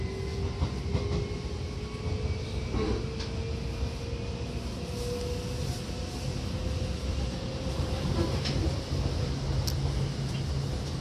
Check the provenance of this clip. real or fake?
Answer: real